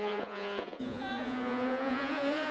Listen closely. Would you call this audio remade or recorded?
remade